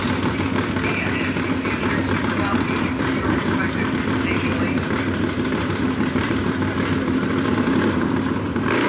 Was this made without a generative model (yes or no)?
yes